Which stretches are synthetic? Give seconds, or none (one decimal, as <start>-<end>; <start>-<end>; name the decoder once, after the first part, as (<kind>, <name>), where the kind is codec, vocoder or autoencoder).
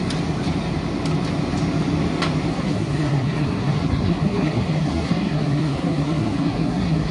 2.5-7.1 (codec, SNAC)